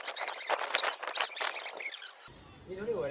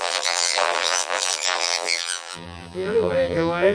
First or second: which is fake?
second